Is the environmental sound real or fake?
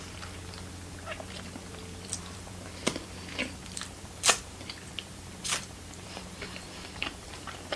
fake